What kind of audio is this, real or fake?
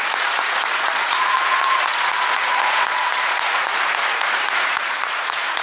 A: fake